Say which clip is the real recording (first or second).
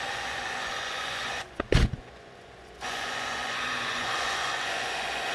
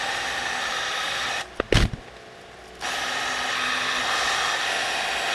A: second